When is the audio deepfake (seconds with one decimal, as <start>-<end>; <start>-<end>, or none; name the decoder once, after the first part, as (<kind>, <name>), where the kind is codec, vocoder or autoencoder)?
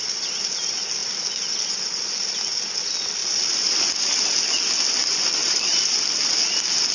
3.2-3.8 (vocoder, BigVGAN v2); 5.4-6.2